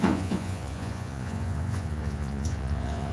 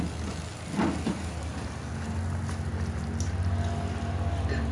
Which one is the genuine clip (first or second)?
second